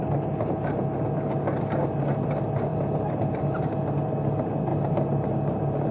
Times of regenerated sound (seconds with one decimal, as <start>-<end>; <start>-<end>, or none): none